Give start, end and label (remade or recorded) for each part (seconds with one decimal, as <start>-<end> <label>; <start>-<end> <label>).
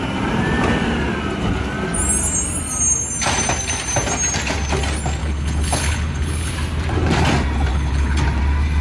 0.0-5.2 recorded; 5.2-6.5 remade; 6.5-7.7 recorded; 7.7-8.2 remade; 8.2-8.8 recorded